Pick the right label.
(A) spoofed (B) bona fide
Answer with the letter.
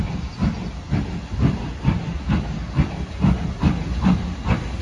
B